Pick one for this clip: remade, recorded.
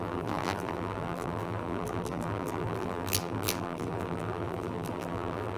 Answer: remade